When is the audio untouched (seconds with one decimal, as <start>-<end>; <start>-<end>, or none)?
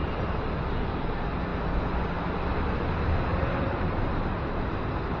0.6-3.3; 4.6-5.2